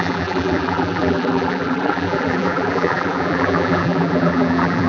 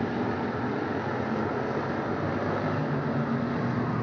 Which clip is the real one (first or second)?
second